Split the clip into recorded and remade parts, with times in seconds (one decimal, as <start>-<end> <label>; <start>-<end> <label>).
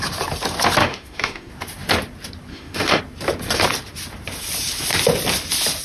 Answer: 0.0-0.8 recorded; 0.8-1.5 remade; 1.5-2.5 recorded; 2.5-3.0 remade; 3.0-5.8 recorded